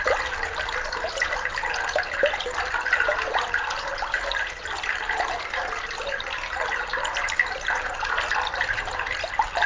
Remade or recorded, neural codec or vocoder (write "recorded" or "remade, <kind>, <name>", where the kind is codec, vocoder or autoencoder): recorded